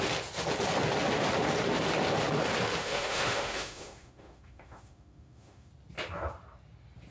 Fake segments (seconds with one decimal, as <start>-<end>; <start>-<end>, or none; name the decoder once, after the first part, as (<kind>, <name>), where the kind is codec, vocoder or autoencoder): 2.8-5.7 (autoencoder, DAC-VAE)